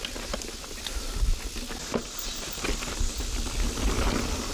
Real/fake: real